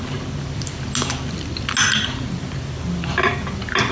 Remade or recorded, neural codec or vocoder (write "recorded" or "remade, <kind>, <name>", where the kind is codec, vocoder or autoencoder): recorded